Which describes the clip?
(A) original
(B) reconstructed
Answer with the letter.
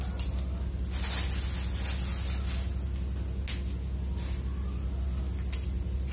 A